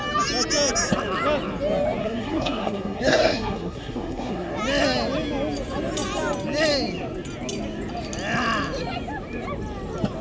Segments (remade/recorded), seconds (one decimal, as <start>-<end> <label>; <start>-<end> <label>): 0.0-2.0 recorded; 2.0-4.5 remade; 4.5-10.2 recorded